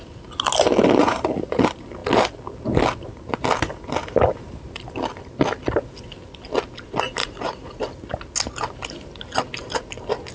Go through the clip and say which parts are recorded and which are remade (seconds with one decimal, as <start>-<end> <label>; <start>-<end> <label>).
0.0-1.0 recorded; 1.0-1.6 remade; 1.6-7.2 recorded; 7.2-7.8 remade; 7.8-10.3 recorded